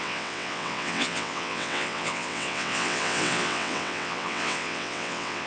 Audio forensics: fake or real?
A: fake